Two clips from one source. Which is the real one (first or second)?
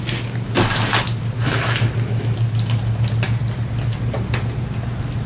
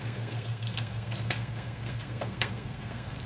first